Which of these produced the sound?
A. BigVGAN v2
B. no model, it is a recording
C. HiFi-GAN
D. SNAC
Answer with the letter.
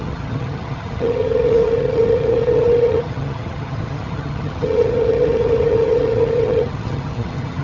C